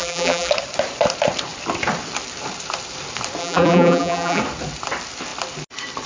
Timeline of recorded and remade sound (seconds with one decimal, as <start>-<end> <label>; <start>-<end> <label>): 0.0-0.5 remade; 0.5-3.4 recorded; 3.4-4.4 remade; 4.4-6.1 recorded